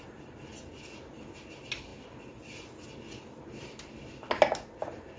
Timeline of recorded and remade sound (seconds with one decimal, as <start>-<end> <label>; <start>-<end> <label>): 0.0-5.2 recorded